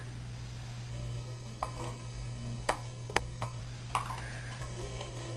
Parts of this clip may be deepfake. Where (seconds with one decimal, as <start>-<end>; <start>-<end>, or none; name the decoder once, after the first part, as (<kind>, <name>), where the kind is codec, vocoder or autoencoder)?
0.9-3.6 (codec, SNAC); 4.6-5.4